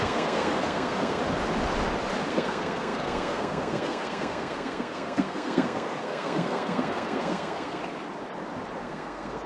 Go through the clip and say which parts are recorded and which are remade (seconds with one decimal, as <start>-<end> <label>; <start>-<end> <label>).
0.0-1.2 remade; 1.2-2.3 recorded; 2.3-7.8 remade; 7.8-8.8 recorded; 8.8-9.5 remade